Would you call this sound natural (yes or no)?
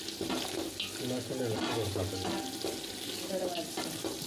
yes